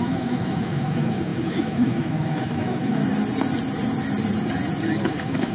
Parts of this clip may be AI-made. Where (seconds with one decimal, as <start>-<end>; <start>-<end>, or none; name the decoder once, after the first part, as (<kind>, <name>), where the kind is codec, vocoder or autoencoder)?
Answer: 0.0-3.0 (autoencoder, DAC-VAE); 5.0-5.5